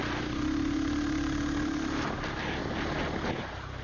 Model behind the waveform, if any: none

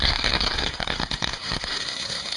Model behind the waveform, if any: codec, SNAC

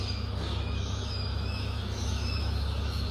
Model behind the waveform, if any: autoencoder, DAC-VAE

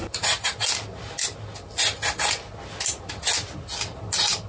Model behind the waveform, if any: none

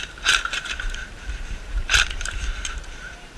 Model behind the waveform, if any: vocoder, BigVGAN v2